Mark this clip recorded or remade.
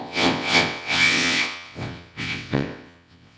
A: remade